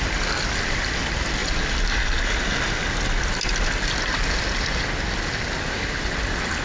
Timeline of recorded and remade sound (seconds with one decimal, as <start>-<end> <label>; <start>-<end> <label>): 0.0-6.6 recorded